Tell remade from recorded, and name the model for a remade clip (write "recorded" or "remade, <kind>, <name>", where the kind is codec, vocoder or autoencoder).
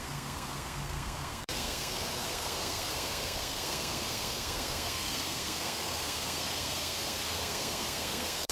remade, codec, SNAC